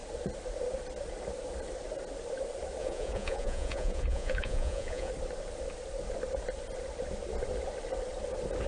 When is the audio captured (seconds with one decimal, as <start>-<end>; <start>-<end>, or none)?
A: 0.0-2.8; 5.1-8.7